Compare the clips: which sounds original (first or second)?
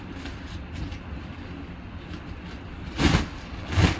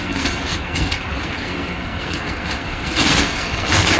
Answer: first